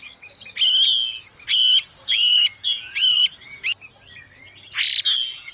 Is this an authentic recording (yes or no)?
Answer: yes